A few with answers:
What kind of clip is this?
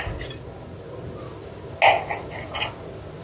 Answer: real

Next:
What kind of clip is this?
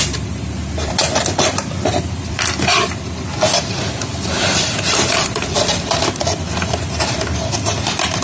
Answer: fake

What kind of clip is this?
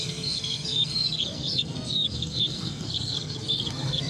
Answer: fake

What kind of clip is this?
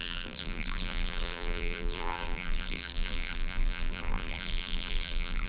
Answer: fake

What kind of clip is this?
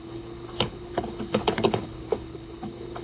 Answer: fake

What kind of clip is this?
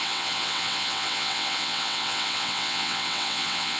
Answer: fake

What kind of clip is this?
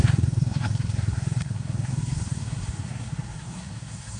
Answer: fake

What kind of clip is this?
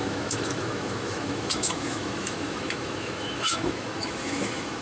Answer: fake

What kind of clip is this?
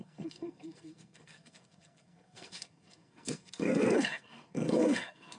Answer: fake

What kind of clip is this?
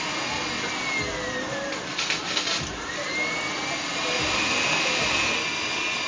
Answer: real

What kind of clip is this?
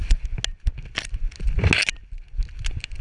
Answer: real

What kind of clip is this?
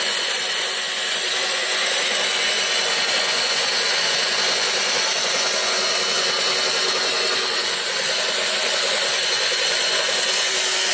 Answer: fake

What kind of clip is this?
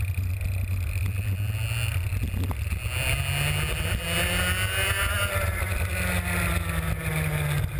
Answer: real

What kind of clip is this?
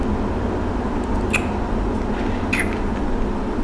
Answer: real